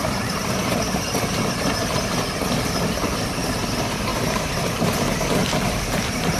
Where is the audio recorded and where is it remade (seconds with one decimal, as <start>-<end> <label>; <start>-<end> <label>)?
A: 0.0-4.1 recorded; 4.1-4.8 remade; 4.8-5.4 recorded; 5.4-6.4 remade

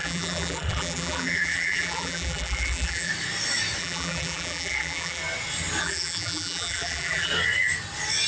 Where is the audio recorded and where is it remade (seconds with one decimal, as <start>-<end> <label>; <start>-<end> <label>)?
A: 0.0-3.1 remade; 3.1-3.8 recorded; 3.8-5.2 remade; 5.2-5.8 recorded; 5.8-7.3 remade; 7.3-8.3 recorded

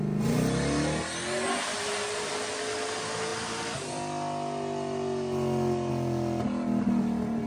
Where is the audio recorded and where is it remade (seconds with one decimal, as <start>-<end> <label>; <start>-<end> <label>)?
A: 0.0-1.7 recorded; 1.7-2.3 remade; 2.3-7.5 recorded